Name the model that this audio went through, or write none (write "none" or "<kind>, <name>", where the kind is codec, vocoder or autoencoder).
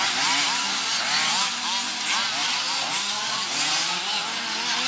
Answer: none